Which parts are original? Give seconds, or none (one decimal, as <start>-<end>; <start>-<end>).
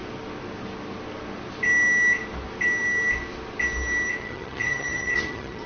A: 0.0-4.2